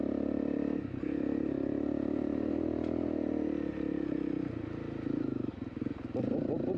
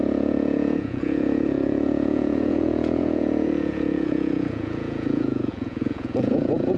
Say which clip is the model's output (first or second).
second